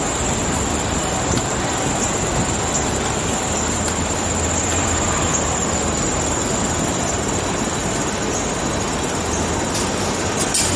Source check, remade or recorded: recorded